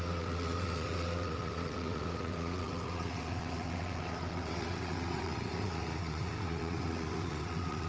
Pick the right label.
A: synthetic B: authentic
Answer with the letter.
A